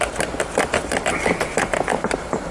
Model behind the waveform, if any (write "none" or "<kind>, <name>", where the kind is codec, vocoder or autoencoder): vocoder, BigVGAN v2